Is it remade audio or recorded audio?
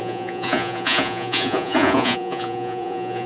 remade